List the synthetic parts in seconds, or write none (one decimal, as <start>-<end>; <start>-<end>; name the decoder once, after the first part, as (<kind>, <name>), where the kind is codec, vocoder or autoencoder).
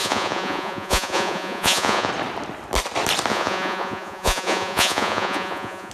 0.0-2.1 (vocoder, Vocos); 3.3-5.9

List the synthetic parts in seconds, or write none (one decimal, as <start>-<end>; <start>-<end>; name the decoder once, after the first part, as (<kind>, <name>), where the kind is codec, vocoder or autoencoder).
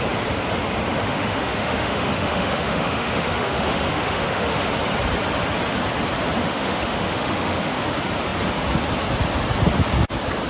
1.0-4.7 (autoencoder, DAC-VAE); 6.4-7.8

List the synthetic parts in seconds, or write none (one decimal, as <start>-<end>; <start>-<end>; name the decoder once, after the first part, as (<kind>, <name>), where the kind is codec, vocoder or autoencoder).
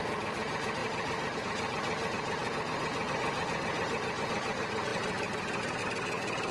0.8-1.4 (vocoder, BigVGAN v2)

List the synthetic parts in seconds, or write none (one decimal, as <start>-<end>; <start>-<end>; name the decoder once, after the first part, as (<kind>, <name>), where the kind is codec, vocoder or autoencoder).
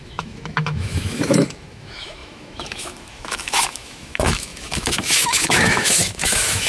0.0-6.7 (autoencoder, DAC-VAE)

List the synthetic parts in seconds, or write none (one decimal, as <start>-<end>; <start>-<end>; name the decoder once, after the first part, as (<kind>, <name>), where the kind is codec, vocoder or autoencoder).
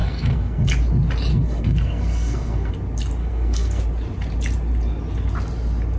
0.0-0.7 (codec, SNAC); 1.3-2.7; 3.2-3.8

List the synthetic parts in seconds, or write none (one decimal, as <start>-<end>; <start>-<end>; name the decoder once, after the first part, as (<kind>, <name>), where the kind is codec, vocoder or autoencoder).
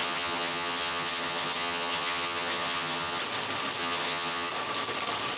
0.0-3.2 (vocoder, HiFi-GAN); 3.8-4.5